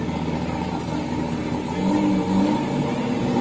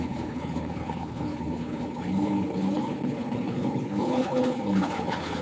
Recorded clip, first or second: first